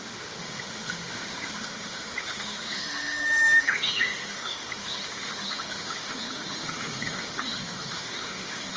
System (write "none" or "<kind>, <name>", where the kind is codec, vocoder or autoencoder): autoencoder, DAC-VAE